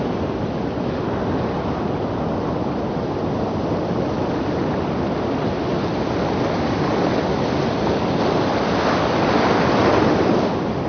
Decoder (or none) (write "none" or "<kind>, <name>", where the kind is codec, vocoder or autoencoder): none